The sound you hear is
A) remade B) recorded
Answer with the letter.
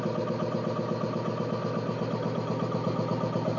B